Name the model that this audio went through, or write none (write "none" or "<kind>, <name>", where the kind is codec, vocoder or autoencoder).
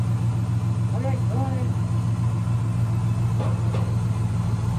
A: none